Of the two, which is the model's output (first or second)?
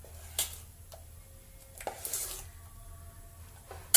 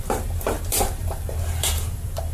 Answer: second